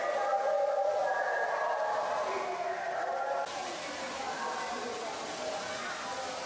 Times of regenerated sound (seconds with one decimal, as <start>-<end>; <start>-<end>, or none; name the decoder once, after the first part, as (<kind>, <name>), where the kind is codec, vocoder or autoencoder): 1.0-1.7 (vocoder, BigVGAN v2); 3.6-4.9